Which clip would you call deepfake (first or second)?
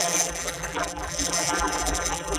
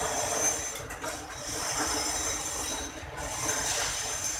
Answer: first